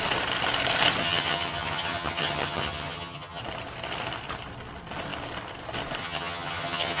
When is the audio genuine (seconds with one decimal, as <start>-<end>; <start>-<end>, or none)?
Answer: 0.0-1.0; 3.4-6.0

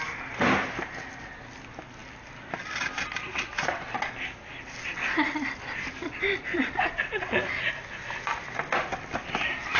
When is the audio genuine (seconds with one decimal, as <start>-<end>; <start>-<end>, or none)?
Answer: 0.0-9.8

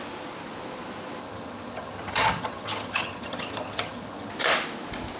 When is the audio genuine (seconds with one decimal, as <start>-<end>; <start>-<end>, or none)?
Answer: 0.0-1.2; 4.3-5.2

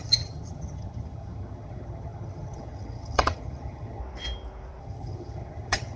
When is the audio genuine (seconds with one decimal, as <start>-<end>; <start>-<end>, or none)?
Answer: 4.0-4.8

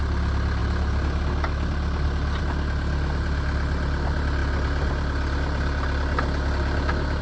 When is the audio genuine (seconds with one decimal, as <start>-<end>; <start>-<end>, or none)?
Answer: 0.0-7.2